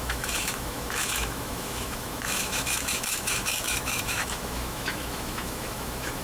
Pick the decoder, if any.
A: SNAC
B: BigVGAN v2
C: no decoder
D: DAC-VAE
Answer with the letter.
D